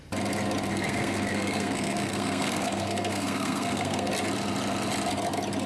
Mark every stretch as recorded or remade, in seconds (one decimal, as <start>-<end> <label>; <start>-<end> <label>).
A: 0.0-0.7 recorded; 0.7-4.1 remade; 4.1-5.7 recorded